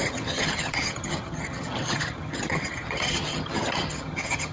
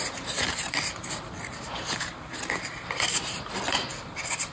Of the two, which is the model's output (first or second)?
first